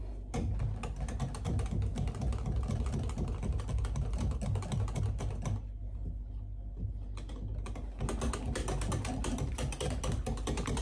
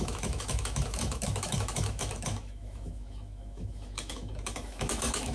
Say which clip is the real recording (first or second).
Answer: first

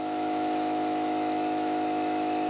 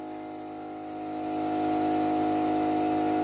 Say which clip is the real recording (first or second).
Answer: second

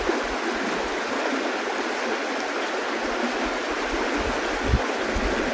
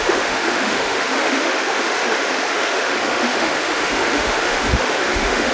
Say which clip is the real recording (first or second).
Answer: first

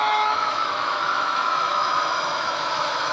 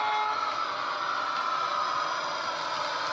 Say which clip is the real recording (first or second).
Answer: second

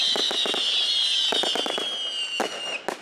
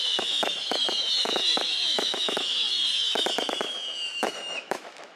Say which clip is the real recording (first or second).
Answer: first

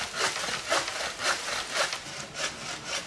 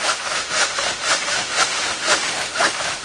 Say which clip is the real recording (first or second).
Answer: first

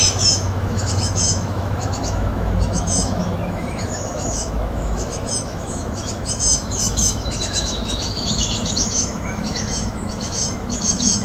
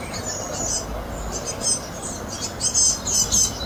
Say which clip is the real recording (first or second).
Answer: second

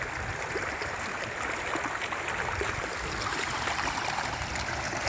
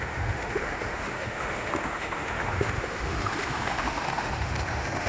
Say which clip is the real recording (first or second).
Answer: first